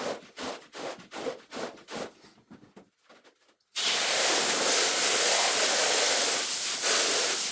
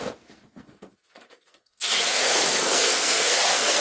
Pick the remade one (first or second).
second